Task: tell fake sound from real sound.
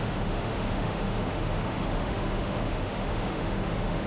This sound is fake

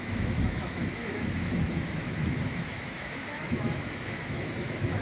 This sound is fake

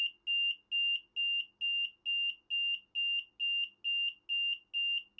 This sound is real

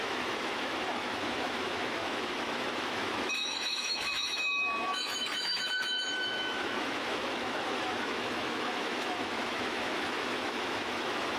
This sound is fake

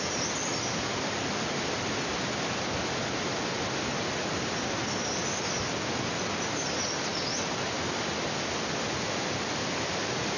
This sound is real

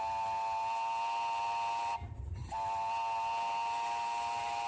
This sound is real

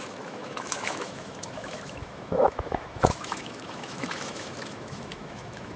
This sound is fake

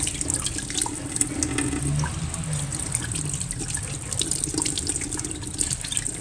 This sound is real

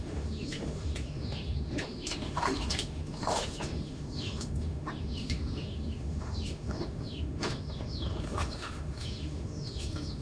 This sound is fake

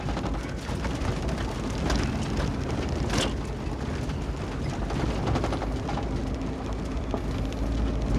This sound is real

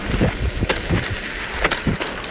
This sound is real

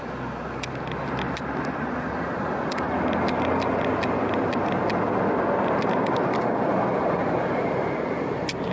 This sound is real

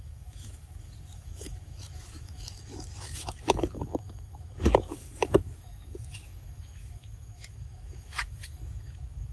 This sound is fake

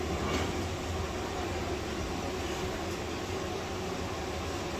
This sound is real